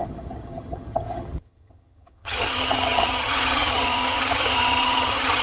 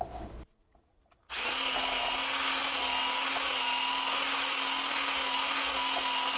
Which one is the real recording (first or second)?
second